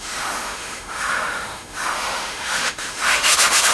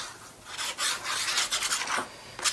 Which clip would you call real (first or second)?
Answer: second